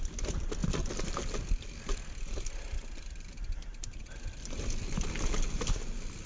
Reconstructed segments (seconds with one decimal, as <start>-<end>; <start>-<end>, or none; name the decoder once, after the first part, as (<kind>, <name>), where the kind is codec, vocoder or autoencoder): 0.0-0.6 (vocoder, BigVGAN v2); 1.7-6.3